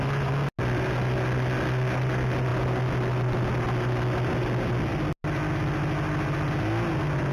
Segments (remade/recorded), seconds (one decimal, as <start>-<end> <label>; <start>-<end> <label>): 0.0-7.3 recorded